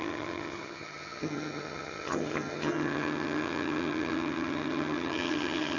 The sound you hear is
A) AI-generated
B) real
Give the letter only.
A